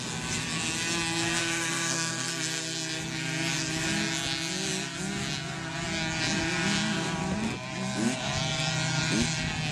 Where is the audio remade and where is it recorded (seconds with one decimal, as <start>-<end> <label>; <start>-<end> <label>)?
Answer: 0.0-1.4 recorded; 1.4-2.3 remade; 2.3-9.7 recorded